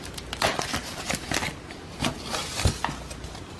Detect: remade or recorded recorded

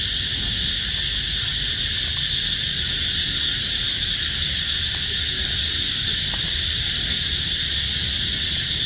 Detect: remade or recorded recorded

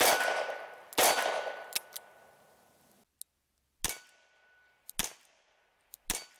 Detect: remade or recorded recorded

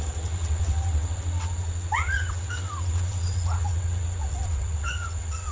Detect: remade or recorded remade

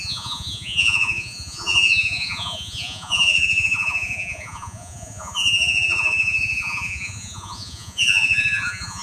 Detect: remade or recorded remade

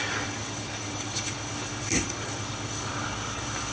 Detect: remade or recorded remade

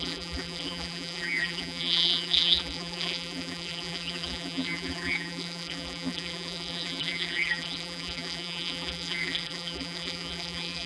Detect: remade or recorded remade